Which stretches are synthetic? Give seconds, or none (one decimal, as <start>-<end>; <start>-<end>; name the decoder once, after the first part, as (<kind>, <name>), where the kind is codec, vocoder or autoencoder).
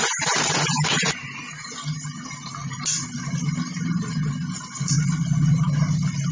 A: 1.5-2.5 (vocoder, BigVGAN v2)